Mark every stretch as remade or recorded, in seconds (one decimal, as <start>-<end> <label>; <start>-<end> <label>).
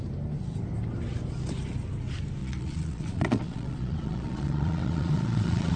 0.0-2.4 recorded; 2.4-5.8 remade